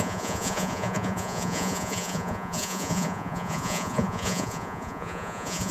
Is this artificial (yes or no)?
yes